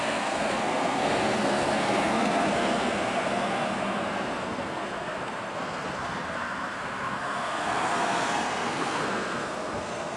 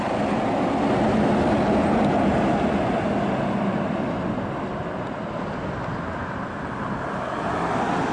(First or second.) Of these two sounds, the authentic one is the second